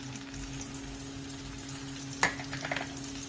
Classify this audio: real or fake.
real